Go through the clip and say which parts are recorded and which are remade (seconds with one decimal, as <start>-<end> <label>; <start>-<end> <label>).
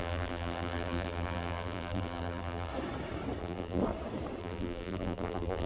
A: 0.0-2.7 remade; 2.7-3.4 recorded; 3.4-3.8 remade; 3.8-4.4 recorded; 4.4-5.7 remade